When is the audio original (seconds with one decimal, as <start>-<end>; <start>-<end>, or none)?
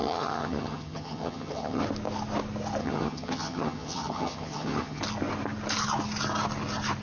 1.8-2.8; 5.0-7.0